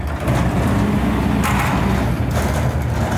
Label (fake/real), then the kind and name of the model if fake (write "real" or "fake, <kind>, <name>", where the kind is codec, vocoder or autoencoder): real